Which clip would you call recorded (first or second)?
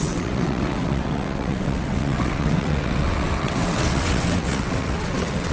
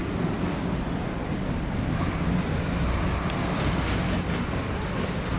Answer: second